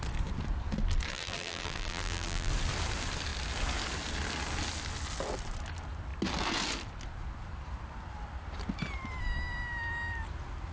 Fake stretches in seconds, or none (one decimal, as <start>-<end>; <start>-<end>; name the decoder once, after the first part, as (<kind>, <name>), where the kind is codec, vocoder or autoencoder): 1.1-2.5 (vocoder, BigVGAN v2)